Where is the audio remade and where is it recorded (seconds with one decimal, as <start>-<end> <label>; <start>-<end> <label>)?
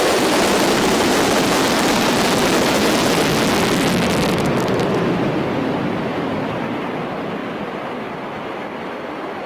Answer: 0.0-9.5 recorded